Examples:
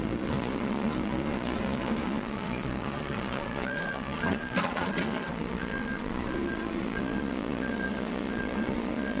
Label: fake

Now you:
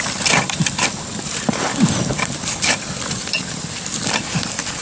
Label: real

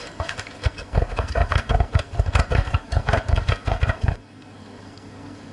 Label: fake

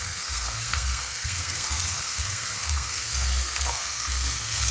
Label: fake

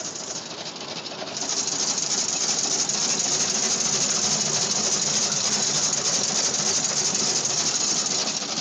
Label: real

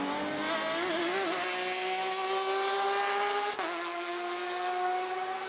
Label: real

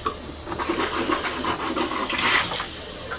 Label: real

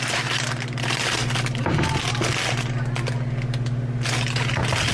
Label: real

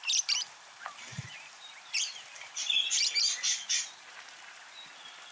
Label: fake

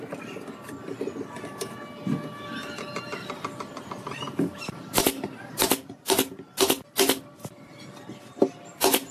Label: real